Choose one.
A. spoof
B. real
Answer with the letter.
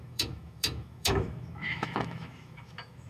A